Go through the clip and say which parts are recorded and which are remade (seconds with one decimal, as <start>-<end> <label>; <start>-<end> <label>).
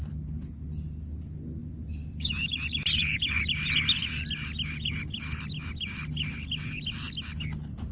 0.0-1.6 recorded; 1.6-4.0 remade; 4.0-7.9 recorded